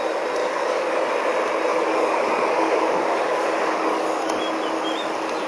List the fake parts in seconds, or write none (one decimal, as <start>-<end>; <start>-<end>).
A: 0.4-1.1; 1.7-4.4